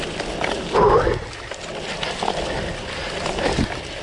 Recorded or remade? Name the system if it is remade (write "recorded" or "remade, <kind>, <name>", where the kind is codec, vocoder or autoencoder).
recorded